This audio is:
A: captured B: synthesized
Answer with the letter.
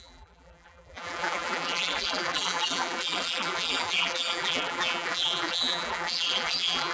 B